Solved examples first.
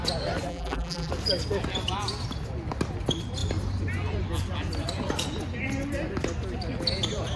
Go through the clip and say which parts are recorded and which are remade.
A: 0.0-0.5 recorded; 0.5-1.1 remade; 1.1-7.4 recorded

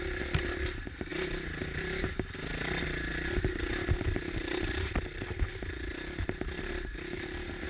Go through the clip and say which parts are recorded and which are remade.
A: 0.0-7.7 recorded